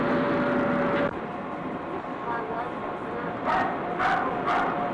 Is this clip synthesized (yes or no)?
no